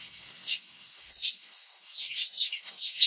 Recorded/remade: remade